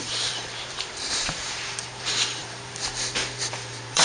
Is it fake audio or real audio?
fake